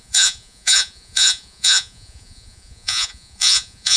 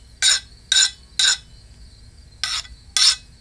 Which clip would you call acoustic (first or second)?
second